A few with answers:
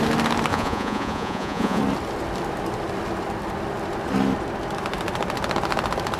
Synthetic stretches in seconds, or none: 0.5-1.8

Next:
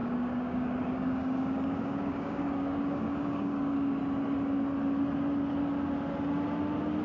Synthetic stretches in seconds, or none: 0.0-4.0

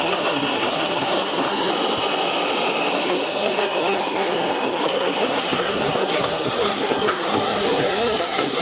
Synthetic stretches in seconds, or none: 0.0-1.7; 2.9-8.6